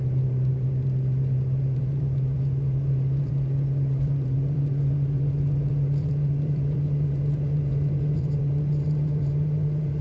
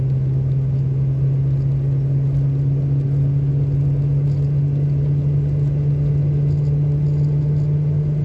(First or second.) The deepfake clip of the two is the first